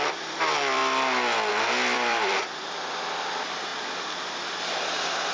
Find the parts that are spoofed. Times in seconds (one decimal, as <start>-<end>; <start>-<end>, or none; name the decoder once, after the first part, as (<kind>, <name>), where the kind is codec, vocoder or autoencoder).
0.0-0.8 (vocoder, BigVGAN v2); 1.5-3.7

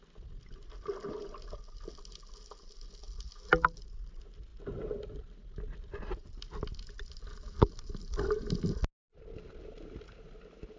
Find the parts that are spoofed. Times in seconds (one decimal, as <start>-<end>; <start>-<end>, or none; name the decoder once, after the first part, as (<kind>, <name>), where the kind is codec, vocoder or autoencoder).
none

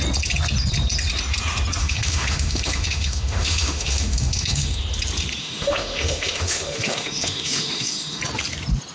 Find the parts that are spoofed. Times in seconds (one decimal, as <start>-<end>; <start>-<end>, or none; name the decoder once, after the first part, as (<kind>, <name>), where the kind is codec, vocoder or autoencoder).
1.8-4.8 (autoencoder, DAC-VAE); 5.4-8.2

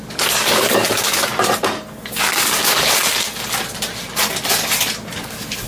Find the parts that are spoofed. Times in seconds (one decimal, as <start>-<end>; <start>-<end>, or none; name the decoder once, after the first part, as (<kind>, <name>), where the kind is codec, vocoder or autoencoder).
0.0-1.3 (codec, DAC); 1.9-3.0; 5.2-5.7